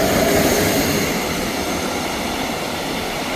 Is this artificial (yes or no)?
no